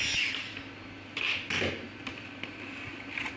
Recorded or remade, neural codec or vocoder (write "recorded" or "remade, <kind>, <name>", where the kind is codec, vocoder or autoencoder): recorded